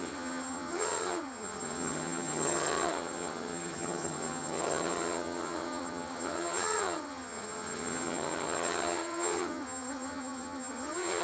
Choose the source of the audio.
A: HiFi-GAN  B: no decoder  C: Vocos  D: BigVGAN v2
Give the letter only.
A